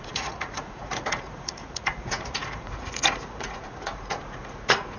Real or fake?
fake